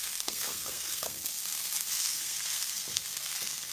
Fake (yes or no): yes